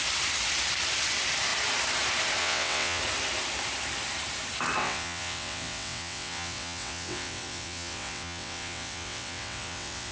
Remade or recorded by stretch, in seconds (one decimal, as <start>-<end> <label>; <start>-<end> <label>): 0.0-2.4 recorded; 2.4-3.0 remade; 3.0-4.8 recorded; 4.8-10.1 remade